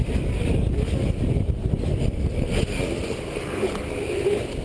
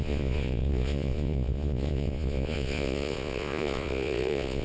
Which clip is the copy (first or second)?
second